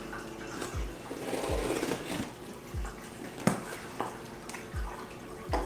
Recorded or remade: recorded